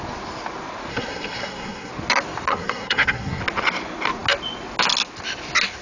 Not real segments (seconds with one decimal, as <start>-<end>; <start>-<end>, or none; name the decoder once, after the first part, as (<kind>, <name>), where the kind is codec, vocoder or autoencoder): 0.9-1.9 (codec, SNAC); 2.5-3.4